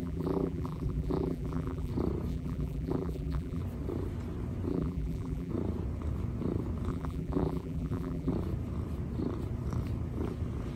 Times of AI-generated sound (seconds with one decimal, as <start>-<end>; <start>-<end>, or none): 0.0-1.9; 2.3-3.6; 4.7-5.5; 6.9-8.3